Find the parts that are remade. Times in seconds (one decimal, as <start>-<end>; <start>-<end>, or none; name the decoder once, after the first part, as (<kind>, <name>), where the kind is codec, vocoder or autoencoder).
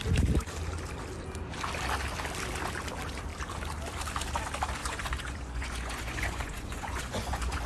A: 4.8-7.7 (vocoder, Vocos)